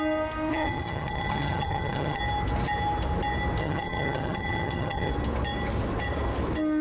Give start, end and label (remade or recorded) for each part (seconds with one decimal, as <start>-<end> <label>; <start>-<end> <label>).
0.0-0.5 recorded; 0.5-2.2 remade; 2.2-3.6 recorded; 3.6-5.1 remade; 5.1-6.8 recorded